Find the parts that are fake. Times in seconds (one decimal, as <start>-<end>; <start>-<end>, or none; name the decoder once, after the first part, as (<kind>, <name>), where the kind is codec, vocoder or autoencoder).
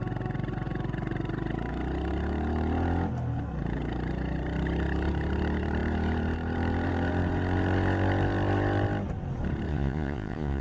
9.7-10.6 (vocoder, Vocos)